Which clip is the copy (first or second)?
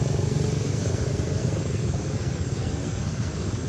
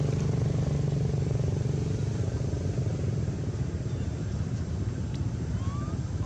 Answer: first